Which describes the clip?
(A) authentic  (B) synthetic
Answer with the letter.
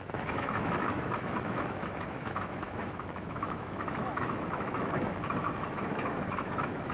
B